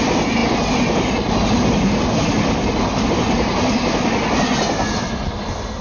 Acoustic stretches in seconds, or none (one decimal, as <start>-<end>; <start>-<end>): 0.0-5.8